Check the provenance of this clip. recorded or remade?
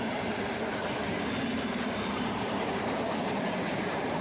remade